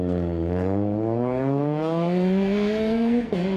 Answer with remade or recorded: remade